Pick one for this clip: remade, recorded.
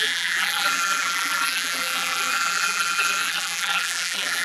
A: remade